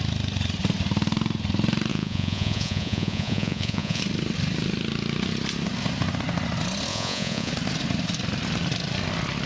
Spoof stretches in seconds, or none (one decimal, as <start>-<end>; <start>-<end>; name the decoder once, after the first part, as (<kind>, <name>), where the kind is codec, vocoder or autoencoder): 1.9-4.0 (vocoder, Vocos); 6.9-7.5